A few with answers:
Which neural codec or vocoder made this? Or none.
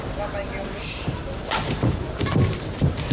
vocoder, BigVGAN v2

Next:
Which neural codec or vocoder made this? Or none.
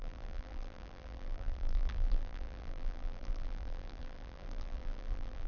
vocoder, BigVGAN v2